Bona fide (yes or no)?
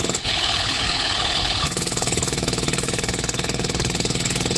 no